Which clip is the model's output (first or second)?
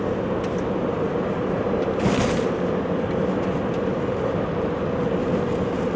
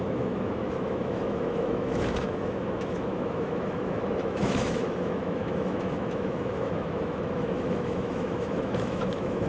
second